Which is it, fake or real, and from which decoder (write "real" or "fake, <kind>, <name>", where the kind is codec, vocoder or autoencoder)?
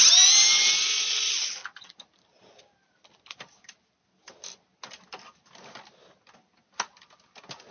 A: real